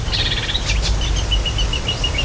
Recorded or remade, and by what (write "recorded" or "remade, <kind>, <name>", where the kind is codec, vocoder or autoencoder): recorded